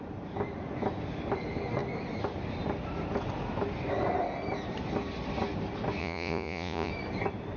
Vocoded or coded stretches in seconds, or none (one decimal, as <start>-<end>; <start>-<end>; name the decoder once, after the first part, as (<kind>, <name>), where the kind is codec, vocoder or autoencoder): 6.0-6.9 (vocoder, Vocos)